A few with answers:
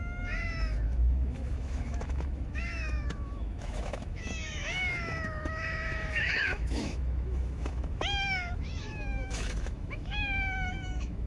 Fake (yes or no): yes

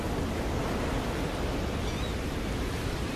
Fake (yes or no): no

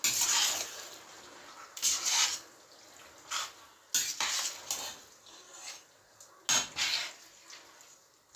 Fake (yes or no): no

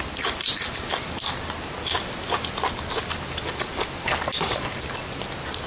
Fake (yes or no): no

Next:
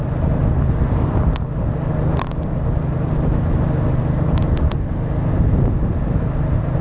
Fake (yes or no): no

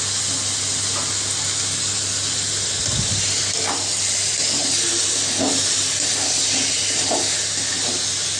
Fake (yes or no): no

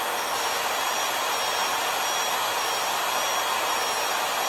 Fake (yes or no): no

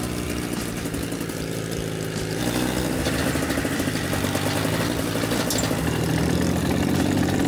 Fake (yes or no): no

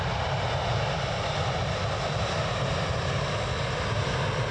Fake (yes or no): no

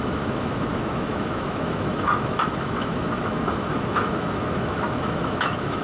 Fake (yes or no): yes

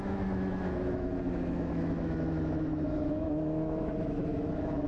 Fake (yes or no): yes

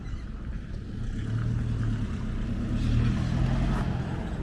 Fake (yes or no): no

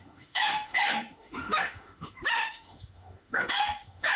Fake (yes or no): yes